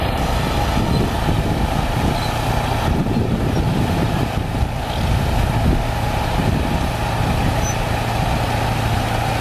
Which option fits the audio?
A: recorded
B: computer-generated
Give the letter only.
A